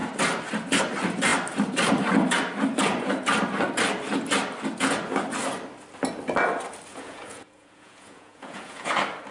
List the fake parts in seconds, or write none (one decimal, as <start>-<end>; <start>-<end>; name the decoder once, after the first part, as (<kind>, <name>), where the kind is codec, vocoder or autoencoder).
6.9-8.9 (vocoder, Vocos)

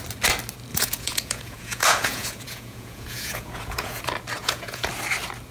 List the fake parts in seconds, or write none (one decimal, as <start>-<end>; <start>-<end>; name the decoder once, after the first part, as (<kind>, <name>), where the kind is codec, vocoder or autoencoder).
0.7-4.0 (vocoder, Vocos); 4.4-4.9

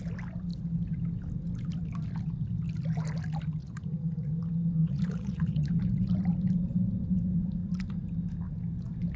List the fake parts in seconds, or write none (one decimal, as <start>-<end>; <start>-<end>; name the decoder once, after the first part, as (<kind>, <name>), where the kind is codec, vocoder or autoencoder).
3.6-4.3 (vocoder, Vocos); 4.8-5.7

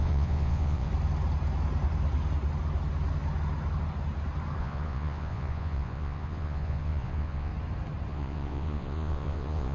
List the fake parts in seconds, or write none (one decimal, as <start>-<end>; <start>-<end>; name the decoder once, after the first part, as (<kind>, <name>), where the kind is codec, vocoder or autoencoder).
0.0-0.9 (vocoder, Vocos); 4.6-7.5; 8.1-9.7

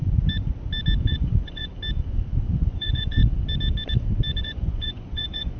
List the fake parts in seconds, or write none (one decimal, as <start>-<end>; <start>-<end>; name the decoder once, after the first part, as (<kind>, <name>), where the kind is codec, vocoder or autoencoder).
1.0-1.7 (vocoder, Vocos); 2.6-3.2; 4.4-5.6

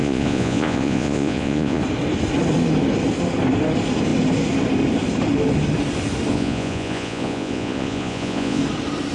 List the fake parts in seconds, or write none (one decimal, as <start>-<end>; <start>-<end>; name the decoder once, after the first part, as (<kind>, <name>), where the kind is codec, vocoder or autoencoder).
0.0-1.8 (vocoder, Vocos); 6.3-8.6

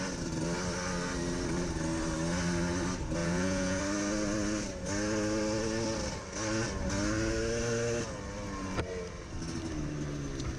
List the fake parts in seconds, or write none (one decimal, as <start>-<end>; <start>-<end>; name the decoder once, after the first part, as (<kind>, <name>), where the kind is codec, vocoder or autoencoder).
3.2-3.8 (vocoder, Vocos)

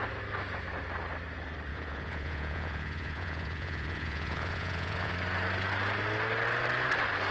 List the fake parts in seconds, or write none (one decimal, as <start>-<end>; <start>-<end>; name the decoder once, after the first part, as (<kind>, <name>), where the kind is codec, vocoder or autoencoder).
1.7-5.1 (vocoder, Vocos)